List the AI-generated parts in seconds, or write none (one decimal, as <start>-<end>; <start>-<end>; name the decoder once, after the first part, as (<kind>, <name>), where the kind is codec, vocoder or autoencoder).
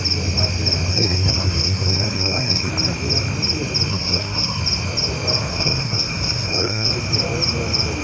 0.9-2.7 (codec, SNAC); 3.9-4.6; 5.5-6.9